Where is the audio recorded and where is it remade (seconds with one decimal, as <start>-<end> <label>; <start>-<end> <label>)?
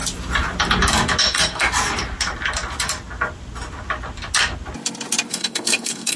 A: 0.0-1.2 recorded; 1.2-1.6 remade; 1.6-5.3 recorded; 5.3-6.2 remade